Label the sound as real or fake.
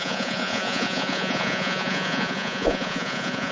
fake